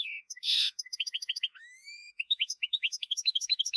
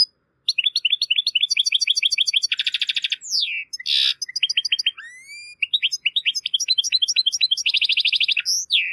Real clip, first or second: second